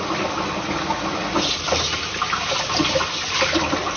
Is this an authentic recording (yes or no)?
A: yes